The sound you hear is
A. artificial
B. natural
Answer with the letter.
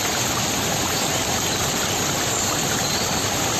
B